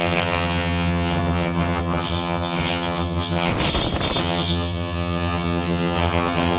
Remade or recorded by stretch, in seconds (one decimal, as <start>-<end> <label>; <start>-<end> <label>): 0.0-3.5 remade; 3.5-4.2 recorded; 4.2-6.6 remade